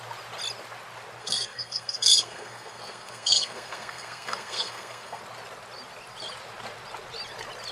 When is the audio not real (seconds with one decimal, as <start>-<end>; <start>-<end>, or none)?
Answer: 1.2-5.2